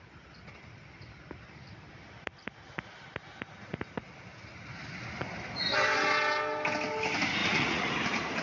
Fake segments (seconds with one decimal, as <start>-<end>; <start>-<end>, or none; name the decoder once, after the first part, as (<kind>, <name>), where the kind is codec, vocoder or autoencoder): 7.4-7.9 (vocoder, Vocos)

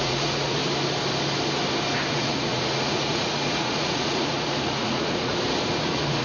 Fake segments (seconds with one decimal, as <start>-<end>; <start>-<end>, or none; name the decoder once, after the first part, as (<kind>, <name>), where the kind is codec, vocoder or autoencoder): 0.0-0.6 (vocoder, Vocos); 2.1-5.3; 5.8-6.2

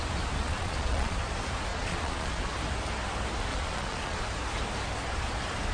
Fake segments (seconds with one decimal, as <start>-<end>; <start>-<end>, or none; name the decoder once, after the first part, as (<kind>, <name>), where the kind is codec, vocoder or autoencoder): 0.4-1.2 (vocoder, Vocos); 1.7-2.4; 3.5-4.2

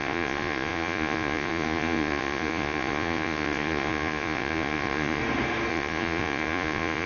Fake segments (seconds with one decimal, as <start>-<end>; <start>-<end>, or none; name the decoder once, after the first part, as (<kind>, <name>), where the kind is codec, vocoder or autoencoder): 0.0-5.2 (vocoder, Vocos); 5.7-7.1

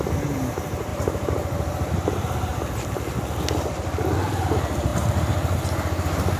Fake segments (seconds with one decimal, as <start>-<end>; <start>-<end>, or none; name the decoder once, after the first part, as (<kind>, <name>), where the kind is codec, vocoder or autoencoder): none